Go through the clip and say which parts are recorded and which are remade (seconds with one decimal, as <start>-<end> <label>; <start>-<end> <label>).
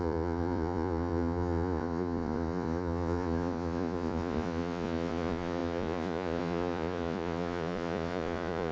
0.0-8.7 remade